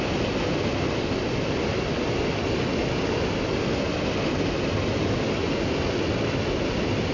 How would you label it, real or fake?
real